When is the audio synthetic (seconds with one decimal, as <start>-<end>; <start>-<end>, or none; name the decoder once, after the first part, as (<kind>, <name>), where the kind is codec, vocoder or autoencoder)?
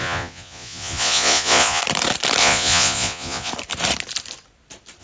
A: 0.0-1.8 (vocoder, Vocos); 2.4-3.5